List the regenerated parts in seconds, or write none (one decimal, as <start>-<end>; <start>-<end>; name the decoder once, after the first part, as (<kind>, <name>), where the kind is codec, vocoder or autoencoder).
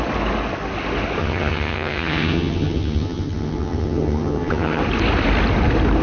1.2-4.8 (vocoder, HiFi-GAN)